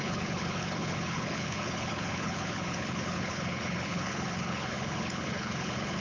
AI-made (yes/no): yes